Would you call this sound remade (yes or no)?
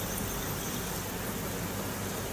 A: no